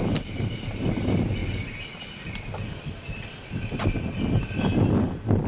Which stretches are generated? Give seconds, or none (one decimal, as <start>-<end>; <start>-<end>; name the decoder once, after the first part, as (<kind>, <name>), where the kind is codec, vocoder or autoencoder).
none